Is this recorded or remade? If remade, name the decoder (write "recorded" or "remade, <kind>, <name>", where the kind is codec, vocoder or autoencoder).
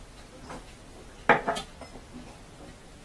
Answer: recorded